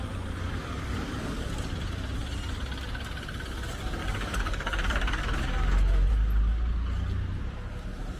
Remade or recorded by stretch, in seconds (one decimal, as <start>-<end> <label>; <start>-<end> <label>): 0.0-0.4 recorded; 0.4-1.5 remade; 1.5-4.0 recorded; 4.0-6.1 remade; 6.1-8.2 recorded